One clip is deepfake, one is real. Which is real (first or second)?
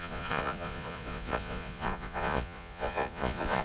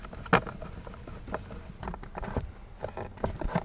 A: second